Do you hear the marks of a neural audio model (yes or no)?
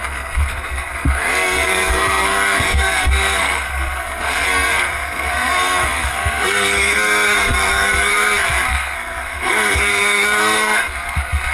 yes